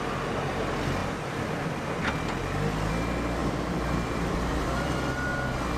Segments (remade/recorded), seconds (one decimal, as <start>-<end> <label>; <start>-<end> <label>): 0.0-3.4 recorded; 3.4-4.9 remade; 4.9-5.8 recorded